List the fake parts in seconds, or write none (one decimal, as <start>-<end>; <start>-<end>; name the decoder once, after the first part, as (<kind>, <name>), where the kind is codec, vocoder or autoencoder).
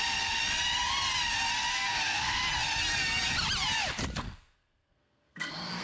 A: 0.0-0.4 (codec, SNAC); 1.7-2.4; 4.2-5.8